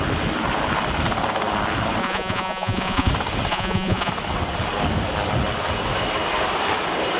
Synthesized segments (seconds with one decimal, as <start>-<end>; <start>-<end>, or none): 2.0-3.1; 3.5-4.1

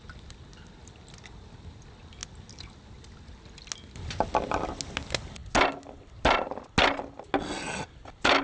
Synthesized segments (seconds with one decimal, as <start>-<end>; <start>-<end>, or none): none

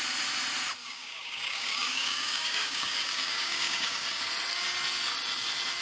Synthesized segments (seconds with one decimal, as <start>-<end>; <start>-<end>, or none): 0.8-4.3

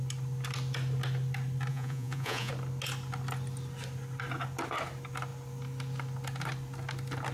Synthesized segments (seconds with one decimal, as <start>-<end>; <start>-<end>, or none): 1.7-2.5